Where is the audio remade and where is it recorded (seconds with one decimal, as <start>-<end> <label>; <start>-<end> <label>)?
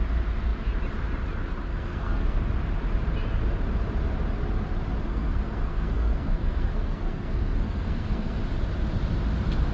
0.0-1.7 recorded; 1.7-2.4 remade; 2.4-5.1 recorded; 5.1-8.4 remade; 8.4-9.7 recorded